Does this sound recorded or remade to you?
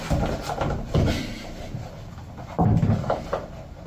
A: recorded